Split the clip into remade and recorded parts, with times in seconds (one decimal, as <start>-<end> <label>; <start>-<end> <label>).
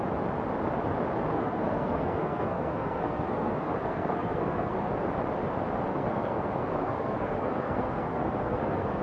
0.0-1.3 recorded; 1.3-4.9 remade; 4.9-5.9 recorded; 5.9-9.0 remade